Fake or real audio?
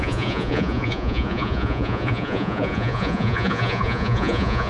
fake